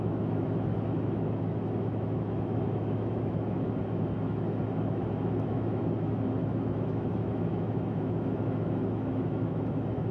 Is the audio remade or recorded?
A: remade